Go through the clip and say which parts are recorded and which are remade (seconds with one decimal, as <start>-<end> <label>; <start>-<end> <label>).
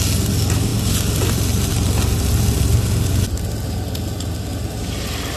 0.0-5.4 recorded